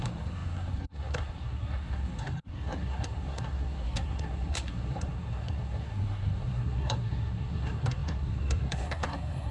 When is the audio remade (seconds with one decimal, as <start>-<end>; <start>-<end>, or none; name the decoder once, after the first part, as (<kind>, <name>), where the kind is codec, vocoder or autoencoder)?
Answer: 0.0-9.5 (codec, SNAC)